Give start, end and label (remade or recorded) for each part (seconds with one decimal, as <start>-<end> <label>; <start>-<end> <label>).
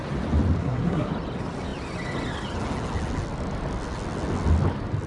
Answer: 0.0-0.6 recorded; 0.6-1.1 remade; 1.1-5.1 recorded